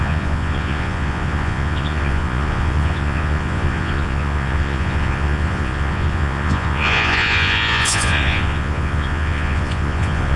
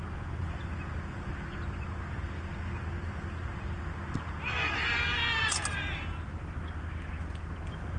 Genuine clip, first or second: second